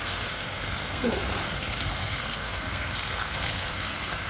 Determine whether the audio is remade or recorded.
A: remade